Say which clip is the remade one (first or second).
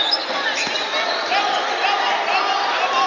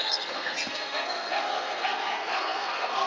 second